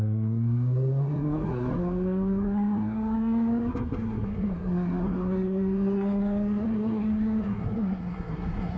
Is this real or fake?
fake